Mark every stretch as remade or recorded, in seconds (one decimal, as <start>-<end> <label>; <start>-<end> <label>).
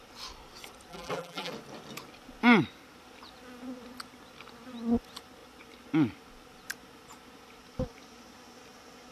0.0-0.9 recorded; 0.9-1.5 remade; 1.5-9.1 recorded